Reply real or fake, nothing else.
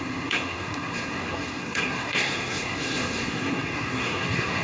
fake